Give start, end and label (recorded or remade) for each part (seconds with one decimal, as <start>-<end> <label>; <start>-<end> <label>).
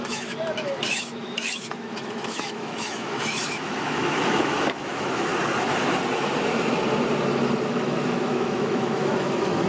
0.0-5.3 remade; 5.3-7.7 recorded; 7.7-9.7 remade